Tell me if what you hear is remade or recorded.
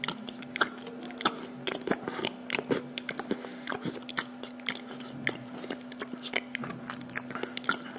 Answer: recorded